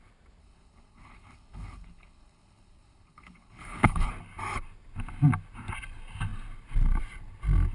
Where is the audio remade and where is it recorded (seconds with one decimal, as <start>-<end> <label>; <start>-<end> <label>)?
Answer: 0.0-0.4 recorded; 0.4-4.1 remade; 4.1-7.7 recorded